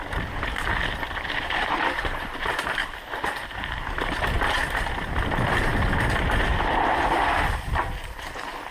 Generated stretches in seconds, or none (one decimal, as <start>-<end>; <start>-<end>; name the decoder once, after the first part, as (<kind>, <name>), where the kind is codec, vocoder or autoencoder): 1.4-2.8 (vocoder, BigVGAN v2); 4.2-5.7